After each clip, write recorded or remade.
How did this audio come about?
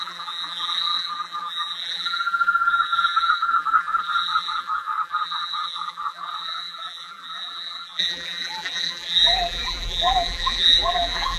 remade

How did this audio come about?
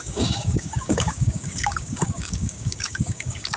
remade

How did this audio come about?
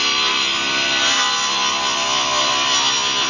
recorded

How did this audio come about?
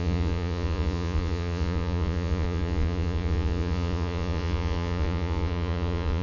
remade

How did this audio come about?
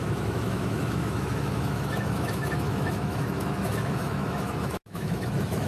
remade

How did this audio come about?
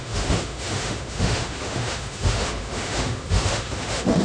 remade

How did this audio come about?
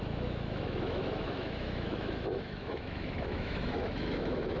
remade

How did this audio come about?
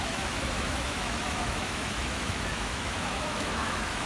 remade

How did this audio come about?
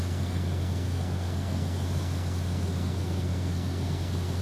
remade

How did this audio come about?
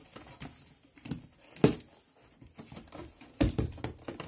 recorded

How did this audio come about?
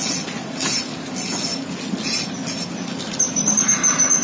recorded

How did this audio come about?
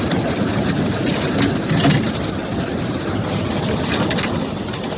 recorded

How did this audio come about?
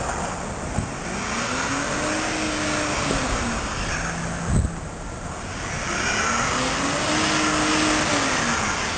recorded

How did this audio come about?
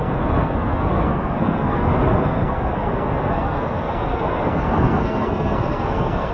remade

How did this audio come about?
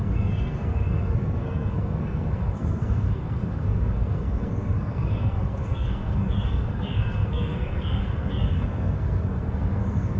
remade